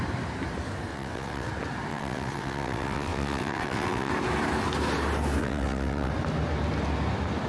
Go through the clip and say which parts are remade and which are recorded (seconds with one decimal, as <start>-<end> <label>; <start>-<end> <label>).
0.0-0.9 recorded; 0.9-1.5 remade; 1.5-1.9 recorded; 1.9-4.1 remade; 4.1-5.4 recorded; 5.4-6.1 remade; 6.1-7.5 recorded